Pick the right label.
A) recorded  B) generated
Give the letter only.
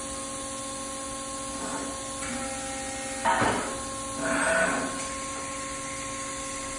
A